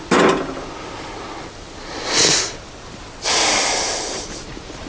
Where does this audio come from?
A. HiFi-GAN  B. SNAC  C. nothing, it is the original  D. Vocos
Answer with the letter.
C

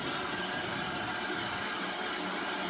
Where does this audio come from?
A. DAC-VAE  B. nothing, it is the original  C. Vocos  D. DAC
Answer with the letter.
B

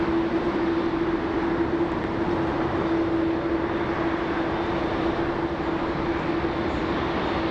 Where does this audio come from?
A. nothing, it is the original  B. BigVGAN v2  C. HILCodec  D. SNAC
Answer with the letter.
A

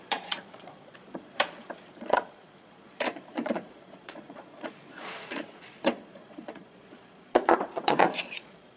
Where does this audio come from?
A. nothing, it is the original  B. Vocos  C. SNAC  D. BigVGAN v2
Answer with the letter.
B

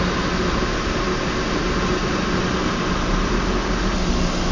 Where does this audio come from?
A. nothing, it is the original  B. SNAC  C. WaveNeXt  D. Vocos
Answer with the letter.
A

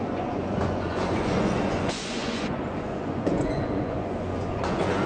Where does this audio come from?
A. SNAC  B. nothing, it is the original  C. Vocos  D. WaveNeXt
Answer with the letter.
C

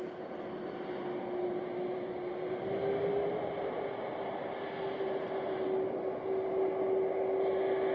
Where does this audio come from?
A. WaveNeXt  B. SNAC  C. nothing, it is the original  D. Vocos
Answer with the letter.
C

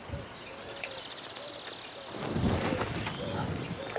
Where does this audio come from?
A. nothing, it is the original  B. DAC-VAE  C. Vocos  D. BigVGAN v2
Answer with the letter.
D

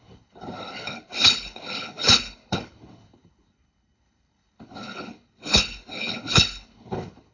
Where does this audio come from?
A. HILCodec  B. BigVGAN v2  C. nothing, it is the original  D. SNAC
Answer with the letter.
A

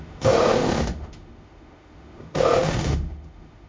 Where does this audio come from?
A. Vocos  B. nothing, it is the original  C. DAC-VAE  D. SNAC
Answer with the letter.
C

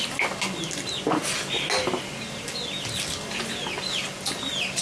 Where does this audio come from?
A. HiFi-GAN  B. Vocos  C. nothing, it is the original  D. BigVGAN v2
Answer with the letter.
C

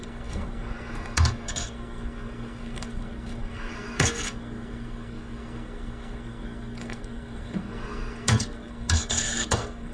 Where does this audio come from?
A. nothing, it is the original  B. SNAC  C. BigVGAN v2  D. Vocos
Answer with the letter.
B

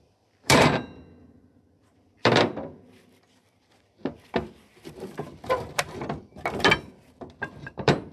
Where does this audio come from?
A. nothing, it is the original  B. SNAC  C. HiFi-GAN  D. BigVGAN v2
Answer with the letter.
D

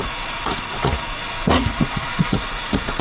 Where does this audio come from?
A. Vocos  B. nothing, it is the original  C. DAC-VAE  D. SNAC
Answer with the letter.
A